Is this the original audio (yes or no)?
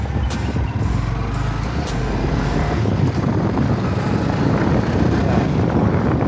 yes